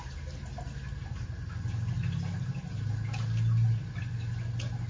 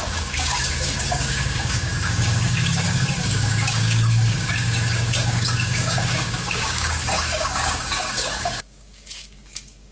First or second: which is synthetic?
second